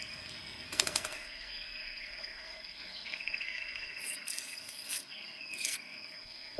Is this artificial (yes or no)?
yes